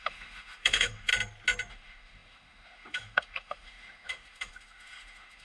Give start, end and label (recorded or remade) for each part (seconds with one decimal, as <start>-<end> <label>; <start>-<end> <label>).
0.0-1.1 remade; 1.1-1.7 recorded; 1.7-5.4 remade